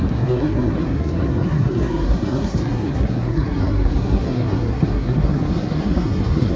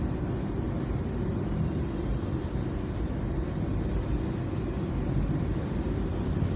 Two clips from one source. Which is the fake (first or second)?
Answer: first